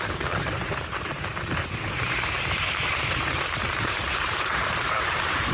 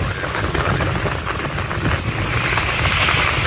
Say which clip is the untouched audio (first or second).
second